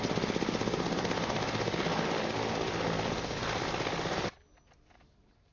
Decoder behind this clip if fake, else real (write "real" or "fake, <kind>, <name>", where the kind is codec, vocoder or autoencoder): real